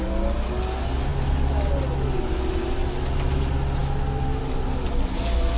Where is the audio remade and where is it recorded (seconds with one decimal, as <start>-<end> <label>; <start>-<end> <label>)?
0.0-5.6 recorded